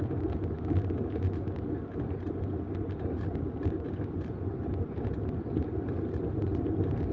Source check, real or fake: real